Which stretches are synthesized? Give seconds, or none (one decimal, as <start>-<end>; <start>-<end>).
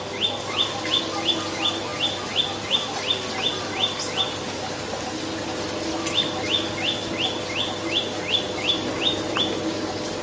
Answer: none